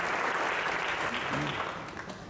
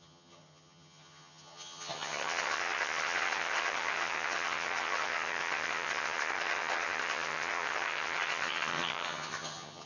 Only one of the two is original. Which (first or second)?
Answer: first